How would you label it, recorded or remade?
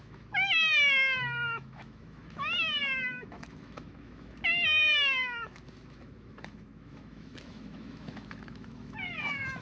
remade